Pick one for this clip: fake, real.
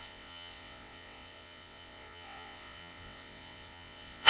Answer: fake